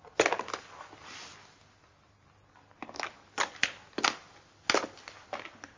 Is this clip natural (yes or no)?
yes